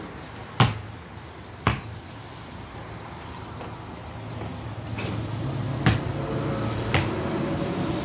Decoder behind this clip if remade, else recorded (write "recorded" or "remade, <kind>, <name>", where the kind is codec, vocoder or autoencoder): recorded